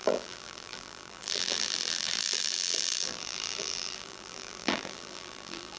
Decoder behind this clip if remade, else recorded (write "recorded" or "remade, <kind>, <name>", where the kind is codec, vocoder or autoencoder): remade, vocoder, BigVGAN v2